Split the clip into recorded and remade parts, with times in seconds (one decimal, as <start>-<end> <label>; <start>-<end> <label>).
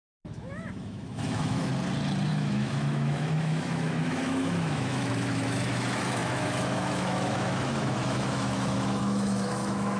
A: 0.0-1.7 remade; 1.7-2.3 recorded; 2.3-10.0 remade